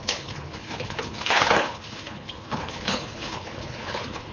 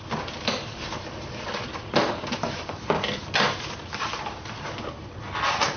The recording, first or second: second